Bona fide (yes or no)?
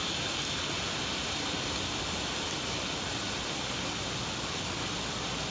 yes